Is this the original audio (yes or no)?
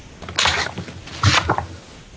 yes